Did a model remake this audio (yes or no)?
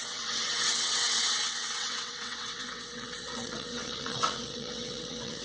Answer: yes